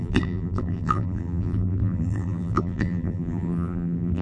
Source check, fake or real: fake